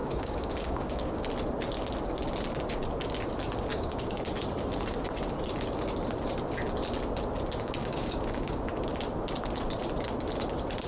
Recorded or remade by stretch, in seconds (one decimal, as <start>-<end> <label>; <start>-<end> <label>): 0.0-1.2 remade; 1.2-3.7 recorded; 3.7-4.2 remade; 4.2-7.8 recorded; 7.8-8.6 remade; 8.6-10.9 recorded